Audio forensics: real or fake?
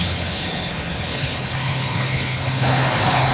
fake